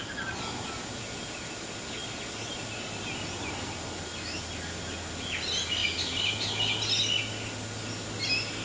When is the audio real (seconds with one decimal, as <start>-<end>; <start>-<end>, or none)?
0.0-8.6